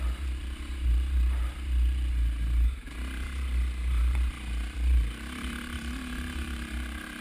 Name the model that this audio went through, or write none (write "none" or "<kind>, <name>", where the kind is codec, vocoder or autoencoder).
vocoder, BigVGAN v2